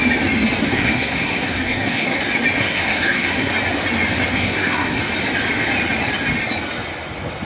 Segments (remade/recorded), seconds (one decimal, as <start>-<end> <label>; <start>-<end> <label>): 0.0-0.7 recorded; 0.7-2.2 remade; 2.2-2.6 recorded; 2.6-3.5 remade; 3.5-4.3 recorded; 4.3-5.0 remade; 5.0-7.4 recorded